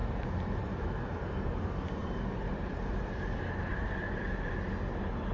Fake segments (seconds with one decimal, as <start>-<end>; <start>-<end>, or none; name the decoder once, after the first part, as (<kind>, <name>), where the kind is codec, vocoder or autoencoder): 0.0-3.2 (vocoder, BigVGAN v2); 3.7-4.5